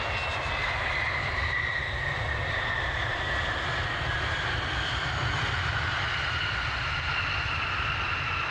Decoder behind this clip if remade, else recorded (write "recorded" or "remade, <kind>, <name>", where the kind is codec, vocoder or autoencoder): recorded